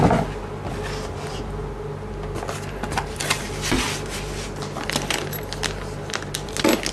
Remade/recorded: recorded